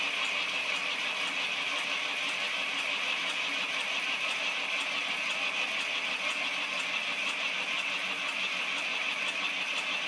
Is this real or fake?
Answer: real